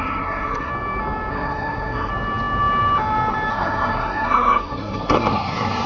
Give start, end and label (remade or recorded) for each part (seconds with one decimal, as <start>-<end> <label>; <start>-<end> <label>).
0.0-0.7 remade; 0.7-1.3 recorded; 1.3-2.1 remade; 2.1-3.5 recorded; 3.5-5.9 remade